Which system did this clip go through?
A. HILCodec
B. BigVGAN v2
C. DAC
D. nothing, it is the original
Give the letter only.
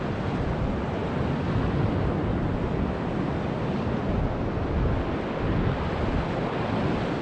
D